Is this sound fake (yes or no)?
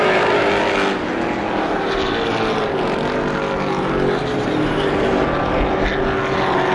no